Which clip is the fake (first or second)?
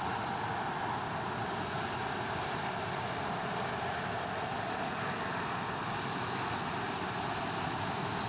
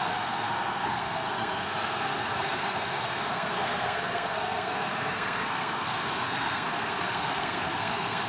second